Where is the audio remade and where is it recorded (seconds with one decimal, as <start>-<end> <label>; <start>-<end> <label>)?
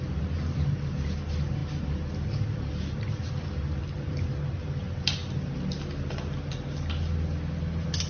0.0-8.1 recorded